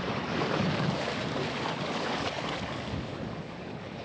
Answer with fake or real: fake